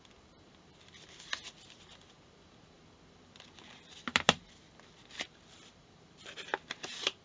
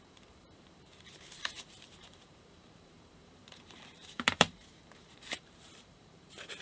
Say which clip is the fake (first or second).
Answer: second